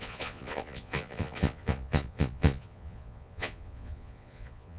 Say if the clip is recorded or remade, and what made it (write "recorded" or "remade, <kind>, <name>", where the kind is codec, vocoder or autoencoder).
remade, vocoder, Vocos